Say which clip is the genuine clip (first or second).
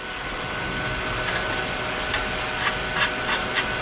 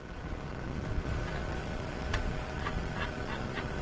first